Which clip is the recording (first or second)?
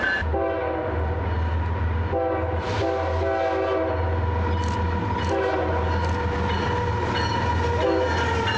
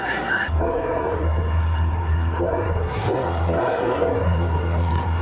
first